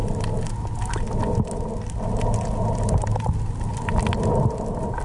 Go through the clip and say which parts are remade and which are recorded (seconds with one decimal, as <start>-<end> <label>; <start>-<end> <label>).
0.0-5.0 recorded

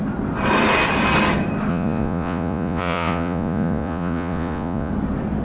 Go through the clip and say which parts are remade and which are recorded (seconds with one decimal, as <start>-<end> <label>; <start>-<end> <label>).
0.0-1.7 recorded; 1.7-4.9 remade; 4.9-5.4 recorded

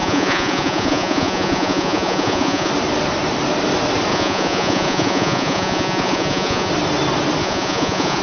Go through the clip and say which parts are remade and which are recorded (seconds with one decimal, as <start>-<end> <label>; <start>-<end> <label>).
0.0-2.7 remade; 2.7-4.1 recorded; 4.1-6.7 remade; 6.7-7.4 recorded; 7.4-8.2 remade

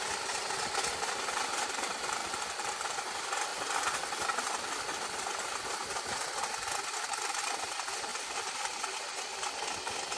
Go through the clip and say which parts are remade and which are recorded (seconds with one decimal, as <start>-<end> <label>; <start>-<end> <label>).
0.0-2.2 recorded; 2.2-2.9 remade; 2.9-3.5 recorded; 3.5-6.3 remade; 6.3-8.1 recorded; 8.1-8.8 remade; 8.8-10.2 recorded

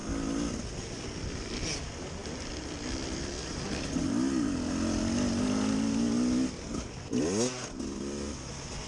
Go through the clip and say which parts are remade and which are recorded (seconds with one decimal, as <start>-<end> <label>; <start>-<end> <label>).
0.0-8.9 recorded